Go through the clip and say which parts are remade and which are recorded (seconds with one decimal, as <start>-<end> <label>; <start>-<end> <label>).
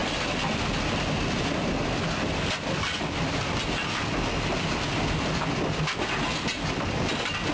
0.0-7.5 recorded